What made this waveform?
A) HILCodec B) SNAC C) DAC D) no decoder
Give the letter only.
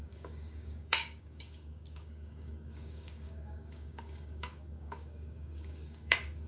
C